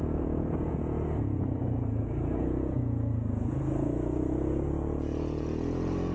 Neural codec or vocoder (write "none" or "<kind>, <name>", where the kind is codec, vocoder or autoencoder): vocoder, Vocos